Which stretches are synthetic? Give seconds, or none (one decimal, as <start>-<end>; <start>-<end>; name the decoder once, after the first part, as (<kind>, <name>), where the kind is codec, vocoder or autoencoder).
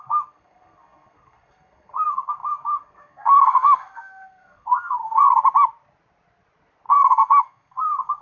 0.0-5.4 (codec, SNAC); 6.9-8.2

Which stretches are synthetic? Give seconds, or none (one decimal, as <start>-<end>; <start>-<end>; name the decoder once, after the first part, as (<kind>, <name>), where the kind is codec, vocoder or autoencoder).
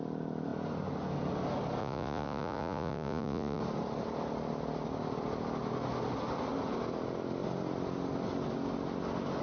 1.8-3.6 (vocoder, Vocos)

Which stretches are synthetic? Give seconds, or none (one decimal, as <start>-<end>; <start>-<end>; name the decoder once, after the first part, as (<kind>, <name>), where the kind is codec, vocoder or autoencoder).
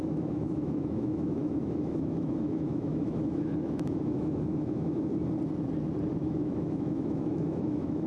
0.0-5.1 (autoencoder, DAC-VAE); 6.1-8.1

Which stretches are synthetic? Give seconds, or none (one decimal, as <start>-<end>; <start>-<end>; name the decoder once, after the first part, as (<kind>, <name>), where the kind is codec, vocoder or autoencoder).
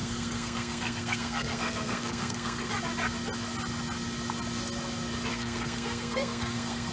0.0-2.7 (codec, SNAC); 5.3-6.9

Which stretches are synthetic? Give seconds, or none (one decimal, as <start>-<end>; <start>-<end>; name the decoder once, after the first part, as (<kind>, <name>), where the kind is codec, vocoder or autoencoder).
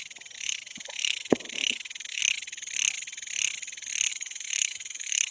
0.7-2.2 (autoencoder, DAC-VAE); 4.1-5.3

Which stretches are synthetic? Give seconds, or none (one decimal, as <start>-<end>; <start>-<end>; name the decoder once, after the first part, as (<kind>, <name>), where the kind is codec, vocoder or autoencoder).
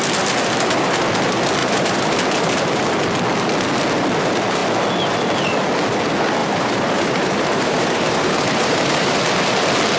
1.6-2.8 (vocoder, BigVGAN v2); 6.4-9.2